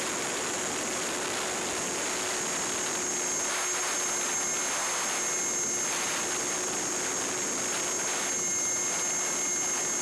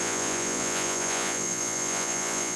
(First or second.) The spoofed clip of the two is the second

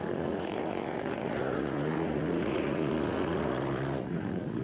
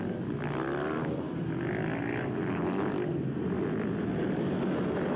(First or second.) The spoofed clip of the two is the first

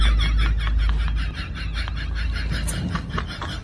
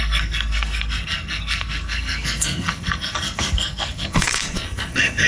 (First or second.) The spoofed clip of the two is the second